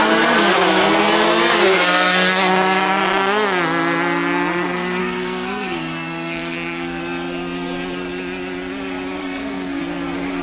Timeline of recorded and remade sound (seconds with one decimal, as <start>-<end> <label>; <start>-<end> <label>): 0.0-1.7 recorded; 1.7-2.5 remade; 2.5-5.0 recorded; 5.0-7.0 remade; 7.0-9.2 recorded; 9.2-9.8 remade; 9.8-10.4 recorded